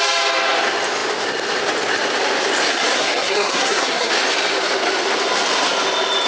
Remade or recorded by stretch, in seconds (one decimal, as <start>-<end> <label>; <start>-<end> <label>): 0.0-2.7 recorded; 2.7-4.1 remade; 4.1-6.3 recorded